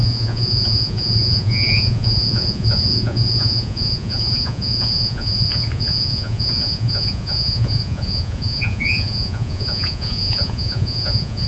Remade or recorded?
remade